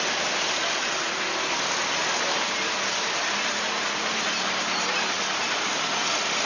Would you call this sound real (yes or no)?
yes